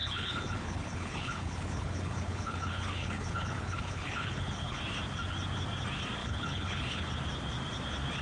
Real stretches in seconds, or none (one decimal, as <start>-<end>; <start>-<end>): 4.8-6.2; 7.1-8.2